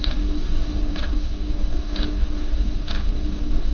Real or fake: fake